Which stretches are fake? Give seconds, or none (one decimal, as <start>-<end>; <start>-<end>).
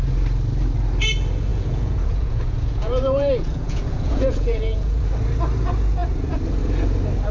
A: 1.5-5.1